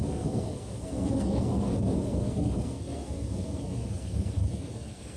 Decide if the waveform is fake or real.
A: fake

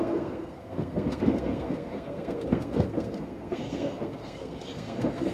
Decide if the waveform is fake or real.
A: fake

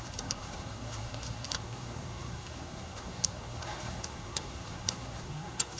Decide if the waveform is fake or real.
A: fake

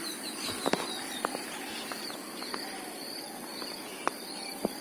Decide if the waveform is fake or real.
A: real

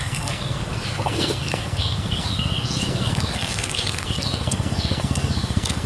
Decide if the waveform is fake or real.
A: fake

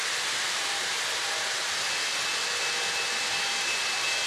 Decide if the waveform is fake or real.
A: real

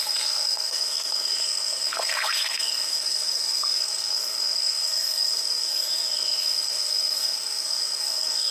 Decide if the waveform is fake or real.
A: fake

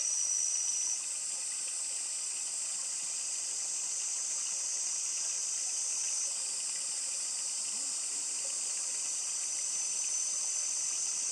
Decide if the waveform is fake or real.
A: real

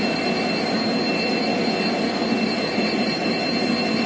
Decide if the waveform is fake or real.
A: real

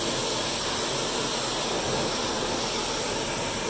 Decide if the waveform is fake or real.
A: real